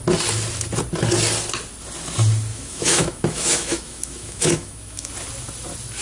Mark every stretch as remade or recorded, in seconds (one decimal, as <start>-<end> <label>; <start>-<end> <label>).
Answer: 0.0-2.5 recorded; 2.5-5.1 remade; 5.1-6.0 recorded